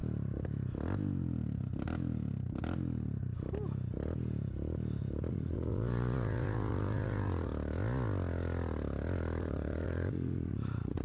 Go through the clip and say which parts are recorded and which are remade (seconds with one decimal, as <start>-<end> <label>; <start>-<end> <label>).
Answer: 0.0-5.3 recorded; 5.3-7.5 remade; 7.5-9.4 recorded; 9.4-11.0 remade